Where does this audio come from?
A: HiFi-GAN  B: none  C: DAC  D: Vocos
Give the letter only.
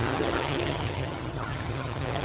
A